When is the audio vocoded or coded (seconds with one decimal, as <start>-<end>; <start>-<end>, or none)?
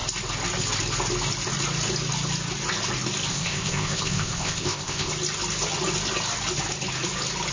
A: 3.3-5.1